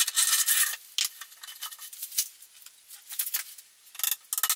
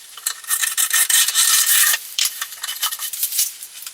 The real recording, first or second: first